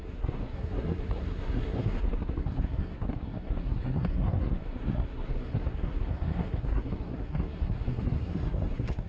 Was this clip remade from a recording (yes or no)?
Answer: yes